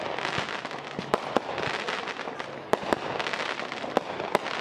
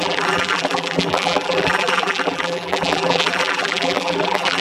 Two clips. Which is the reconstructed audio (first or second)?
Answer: second